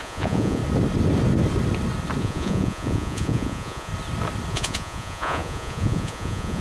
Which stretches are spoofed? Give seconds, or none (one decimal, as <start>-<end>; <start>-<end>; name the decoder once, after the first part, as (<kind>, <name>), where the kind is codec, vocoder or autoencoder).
0.0-0.6 (vocoder, Vocos); 2.2-3.9; 4.5-6.6